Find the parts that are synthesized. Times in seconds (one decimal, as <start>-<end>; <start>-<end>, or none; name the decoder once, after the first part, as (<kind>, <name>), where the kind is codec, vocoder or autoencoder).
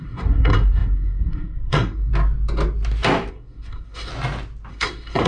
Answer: 0.0-2.1 (codec, SNAC); 3.3-4.1; 4.7-5.3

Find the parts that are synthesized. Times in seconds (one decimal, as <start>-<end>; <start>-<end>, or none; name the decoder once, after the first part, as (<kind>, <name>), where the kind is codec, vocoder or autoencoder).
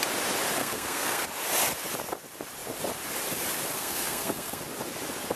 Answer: 0.6-1.2 (codec, SNAC); 3.7-4.6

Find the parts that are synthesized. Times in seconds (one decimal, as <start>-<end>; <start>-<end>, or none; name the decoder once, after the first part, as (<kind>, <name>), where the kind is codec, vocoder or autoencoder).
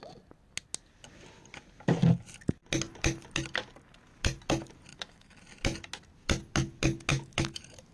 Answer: 4.9-5.4 (autoencoder, DAC-VAE); 7.1-7.9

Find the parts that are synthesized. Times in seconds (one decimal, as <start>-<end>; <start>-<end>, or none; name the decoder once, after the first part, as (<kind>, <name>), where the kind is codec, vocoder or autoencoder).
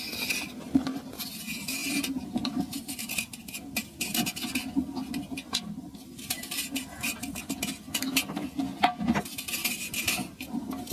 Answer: 1.8-3.0 (vocoder, BigVGAN v2)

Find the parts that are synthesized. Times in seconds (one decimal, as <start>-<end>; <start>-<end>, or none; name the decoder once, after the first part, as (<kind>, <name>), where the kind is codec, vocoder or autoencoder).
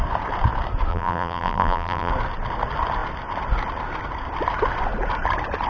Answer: 0.9-2.1 (vocoder, BigVGAN v2)